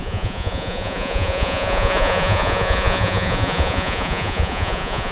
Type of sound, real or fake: fake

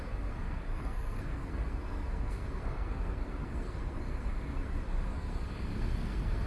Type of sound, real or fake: fake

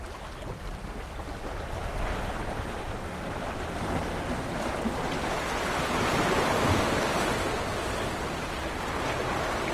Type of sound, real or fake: real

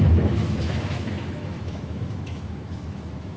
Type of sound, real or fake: fake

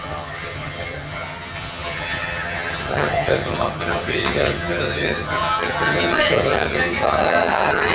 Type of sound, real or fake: fake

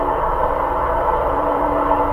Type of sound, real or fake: fake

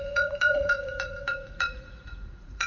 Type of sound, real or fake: fake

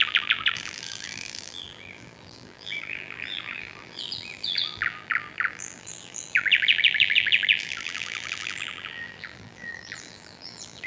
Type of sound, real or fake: fake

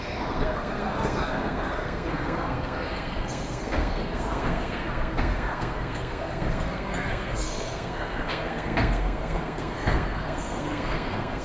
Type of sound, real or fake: fake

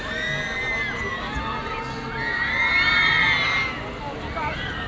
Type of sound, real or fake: real